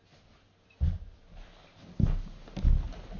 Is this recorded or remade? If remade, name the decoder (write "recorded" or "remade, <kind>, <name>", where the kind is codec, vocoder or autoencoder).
recorded